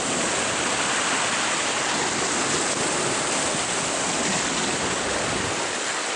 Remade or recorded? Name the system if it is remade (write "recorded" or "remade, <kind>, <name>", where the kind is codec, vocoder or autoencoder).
recorded